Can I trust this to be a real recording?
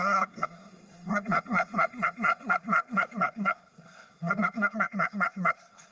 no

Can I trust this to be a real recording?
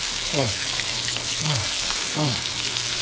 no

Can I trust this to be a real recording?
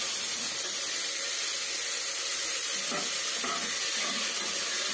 no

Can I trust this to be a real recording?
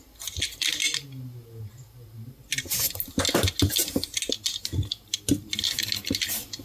yes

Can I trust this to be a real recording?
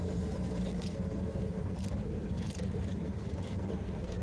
no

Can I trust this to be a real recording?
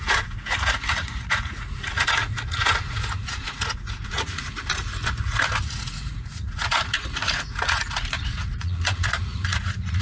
no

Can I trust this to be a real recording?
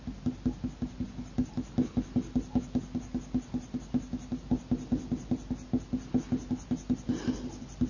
yes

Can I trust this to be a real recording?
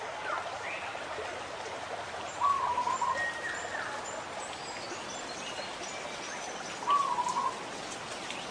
yes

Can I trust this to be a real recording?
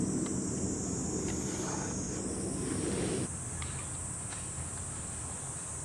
yes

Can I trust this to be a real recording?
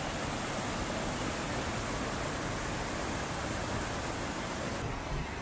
yes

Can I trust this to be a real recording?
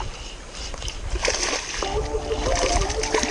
yes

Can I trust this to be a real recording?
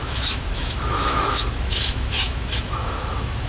no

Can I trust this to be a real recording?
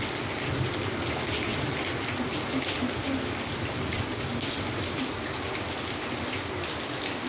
yes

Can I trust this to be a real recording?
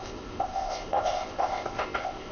no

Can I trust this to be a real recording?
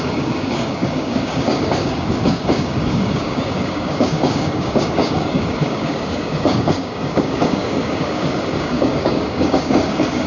no